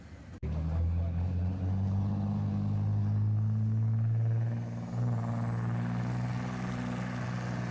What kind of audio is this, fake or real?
real